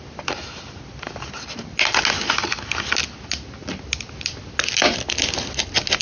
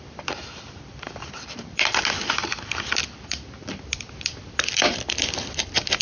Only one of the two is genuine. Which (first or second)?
first